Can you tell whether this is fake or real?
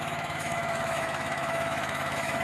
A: fake